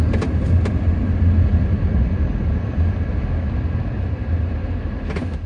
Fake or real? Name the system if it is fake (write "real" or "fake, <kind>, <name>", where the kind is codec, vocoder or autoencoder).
real